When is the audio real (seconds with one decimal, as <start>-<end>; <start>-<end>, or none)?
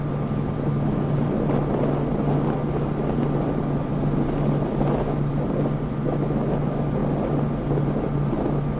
0.0-8.8